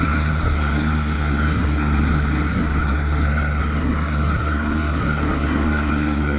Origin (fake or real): fake